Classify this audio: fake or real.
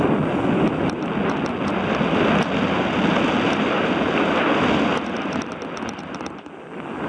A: real